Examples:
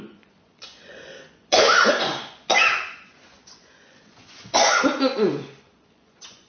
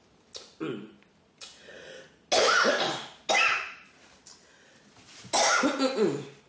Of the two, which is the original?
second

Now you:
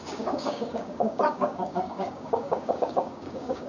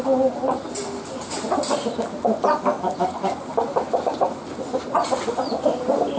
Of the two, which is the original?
second